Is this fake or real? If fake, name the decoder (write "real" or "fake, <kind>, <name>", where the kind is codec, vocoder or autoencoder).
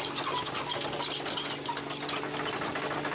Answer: real